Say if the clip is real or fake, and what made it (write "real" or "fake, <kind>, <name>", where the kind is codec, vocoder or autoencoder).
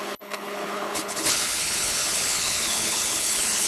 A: fake, codec, HILCodec